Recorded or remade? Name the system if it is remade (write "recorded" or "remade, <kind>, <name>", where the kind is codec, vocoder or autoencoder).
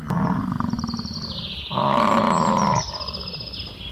recorded